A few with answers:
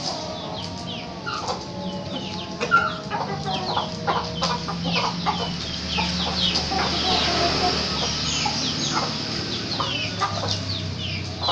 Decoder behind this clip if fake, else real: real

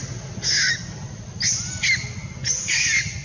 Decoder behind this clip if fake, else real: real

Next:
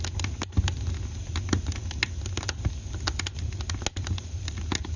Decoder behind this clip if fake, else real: real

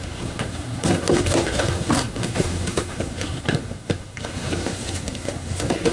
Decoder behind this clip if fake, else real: fake, codec, SNAC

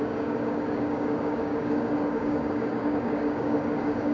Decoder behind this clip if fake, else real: fake, codec, DAC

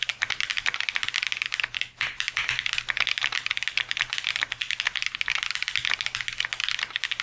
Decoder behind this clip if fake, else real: real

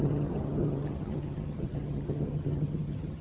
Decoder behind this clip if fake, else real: fake, vocoder, HiFi-GAN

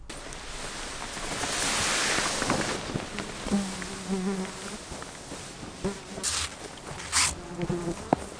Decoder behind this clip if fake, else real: real